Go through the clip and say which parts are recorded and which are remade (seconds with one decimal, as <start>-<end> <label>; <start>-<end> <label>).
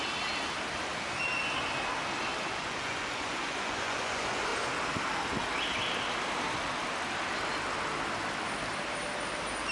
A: 0.0-2.5 recorded; 2.5-4.5 remade; 4.5-9.7 recorded